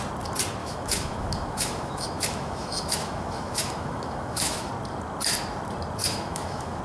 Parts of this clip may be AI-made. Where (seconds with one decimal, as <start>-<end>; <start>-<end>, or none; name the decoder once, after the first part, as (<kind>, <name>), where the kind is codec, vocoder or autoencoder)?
0.6-4.7 (autoencoder, DAC-VAE); 6.0-6.8